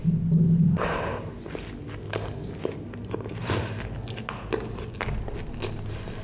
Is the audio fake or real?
real